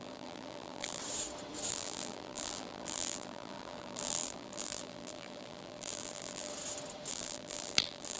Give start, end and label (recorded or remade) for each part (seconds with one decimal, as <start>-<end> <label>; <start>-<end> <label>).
0.0-1.0 remade; 1.0-1.7 recorded; 1.7-6.5 remade; 6.5-7.1 recorded; 7.1-8.2 remade